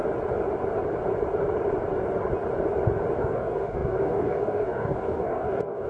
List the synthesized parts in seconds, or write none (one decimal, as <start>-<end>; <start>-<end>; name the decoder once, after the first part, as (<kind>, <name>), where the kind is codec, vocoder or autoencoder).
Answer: 3.2-5.9 (codec, DAC)